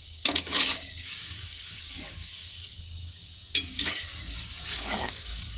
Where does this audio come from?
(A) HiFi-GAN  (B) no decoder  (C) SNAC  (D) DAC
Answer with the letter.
D